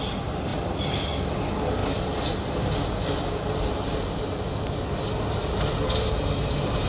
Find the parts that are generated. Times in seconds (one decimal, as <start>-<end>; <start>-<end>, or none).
none